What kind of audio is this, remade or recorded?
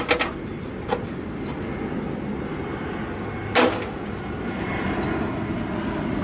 recorded